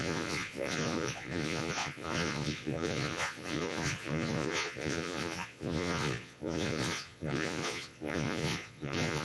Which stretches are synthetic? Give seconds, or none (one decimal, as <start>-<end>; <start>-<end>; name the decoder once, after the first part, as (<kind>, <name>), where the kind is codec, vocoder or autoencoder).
0.0-9.2 (vocoder, Vocos)